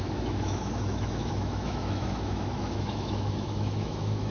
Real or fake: fake